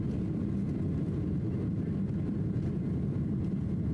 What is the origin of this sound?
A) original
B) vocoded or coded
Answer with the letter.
A